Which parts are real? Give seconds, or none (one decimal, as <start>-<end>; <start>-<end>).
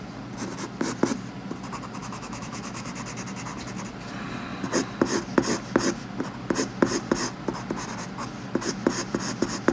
0.0-2.0; 2.9-9.7